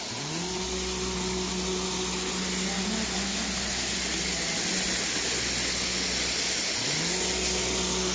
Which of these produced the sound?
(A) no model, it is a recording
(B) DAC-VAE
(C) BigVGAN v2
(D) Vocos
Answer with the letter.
A